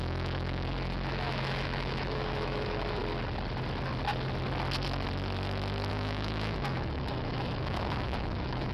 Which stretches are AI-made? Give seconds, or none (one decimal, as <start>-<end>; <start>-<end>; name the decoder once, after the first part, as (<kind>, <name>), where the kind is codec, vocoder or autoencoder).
0.0-3.0 (autoencoder, DAC-VAE); 5.9-8.7